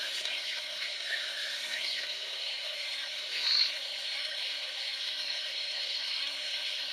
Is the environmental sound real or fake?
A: fake